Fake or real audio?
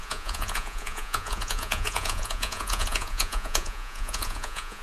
fake